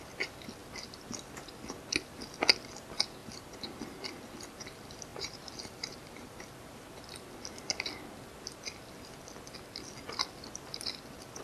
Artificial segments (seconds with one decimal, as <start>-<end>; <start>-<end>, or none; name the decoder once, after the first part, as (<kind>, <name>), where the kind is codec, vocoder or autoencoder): 5.1-6.5 (vocoder, BigVGAN v2)